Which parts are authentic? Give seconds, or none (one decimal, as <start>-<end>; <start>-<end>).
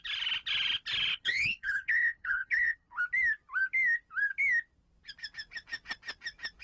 0.0-1.1; 3.0-6.6